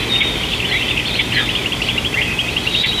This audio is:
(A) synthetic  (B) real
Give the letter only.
B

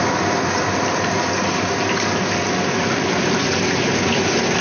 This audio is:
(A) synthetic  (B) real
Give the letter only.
B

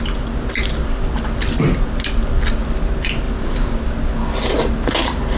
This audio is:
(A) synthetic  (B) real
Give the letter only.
B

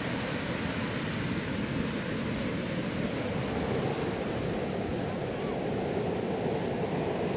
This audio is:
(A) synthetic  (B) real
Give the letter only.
B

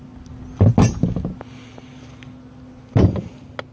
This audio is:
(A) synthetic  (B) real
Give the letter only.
B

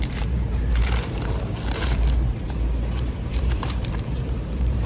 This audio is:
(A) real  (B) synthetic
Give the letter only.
B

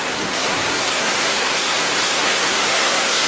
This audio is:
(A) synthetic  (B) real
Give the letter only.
A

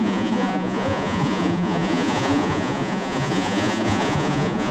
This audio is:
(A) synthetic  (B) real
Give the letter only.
A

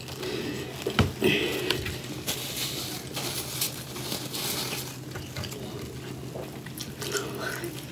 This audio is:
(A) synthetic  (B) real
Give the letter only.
B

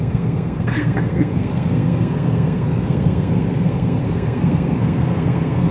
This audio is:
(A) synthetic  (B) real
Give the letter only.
A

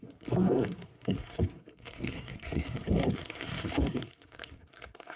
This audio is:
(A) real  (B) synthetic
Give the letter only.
B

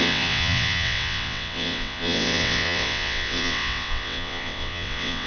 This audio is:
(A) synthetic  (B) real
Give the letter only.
A